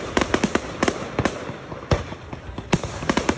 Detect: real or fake real